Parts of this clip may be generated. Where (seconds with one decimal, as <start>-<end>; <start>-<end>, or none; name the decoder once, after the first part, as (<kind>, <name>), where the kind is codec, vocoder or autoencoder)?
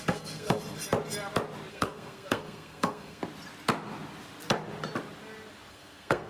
0.0-0.6 (codec, SNAC); 1.7-3.2; 5.7-6.3